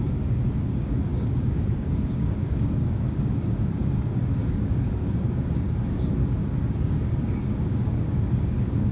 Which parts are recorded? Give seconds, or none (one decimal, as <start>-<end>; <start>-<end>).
none